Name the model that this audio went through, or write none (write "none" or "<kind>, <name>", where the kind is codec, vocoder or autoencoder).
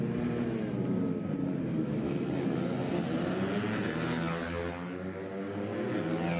none